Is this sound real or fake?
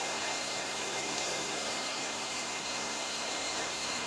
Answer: fake